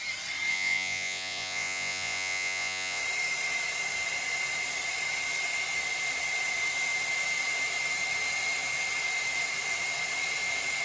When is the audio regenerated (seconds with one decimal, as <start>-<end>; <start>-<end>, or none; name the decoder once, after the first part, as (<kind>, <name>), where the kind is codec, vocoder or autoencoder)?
0.5-3.0 (vocoder, Vocos)